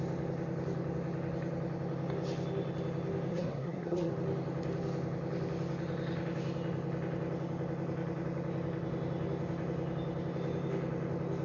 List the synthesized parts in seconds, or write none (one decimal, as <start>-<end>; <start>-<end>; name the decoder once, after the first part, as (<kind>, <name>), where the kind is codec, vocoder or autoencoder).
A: 3.3-4.1 (codec, SNAC)